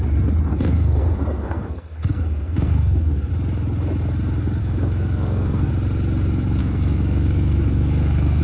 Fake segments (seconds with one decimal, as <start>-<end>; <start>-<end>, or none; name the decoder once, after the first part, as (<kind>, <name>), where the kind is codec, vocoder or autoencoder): 0.5-3.3 (codec, SNAC); 4.6-5.7; 6.6-8.4